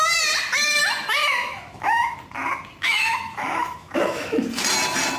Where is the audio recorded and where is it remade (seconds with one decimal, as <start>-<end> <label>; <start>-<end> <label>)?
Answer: 0.0-1.2 recorded; 1.2-2.2 remade; 2.2-2.8 recorded; 2.8-4.4 remade; 4.4-5.2 recorded